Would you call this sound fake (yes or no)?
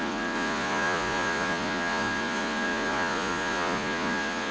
yes